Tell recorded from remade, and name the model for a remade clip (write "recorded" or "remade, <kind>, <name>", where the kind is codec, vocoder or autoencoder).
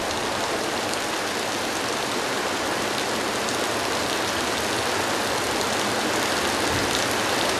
recorded